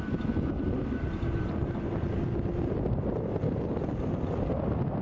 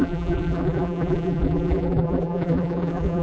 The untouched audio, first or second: first